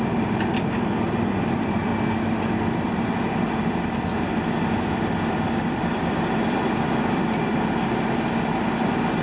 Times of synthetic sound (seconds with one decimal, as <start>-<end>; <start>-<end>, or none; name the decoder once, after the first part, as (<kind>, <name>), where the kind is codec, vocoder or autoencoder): 0.0-1.9 (vocoder, BigVGAN v2); 2.6-9.2